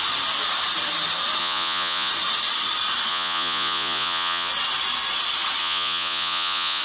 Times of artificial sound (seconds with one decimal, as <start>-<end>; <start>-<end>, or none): 1.4-2.1; 3.1-4.5; 5.6-6.8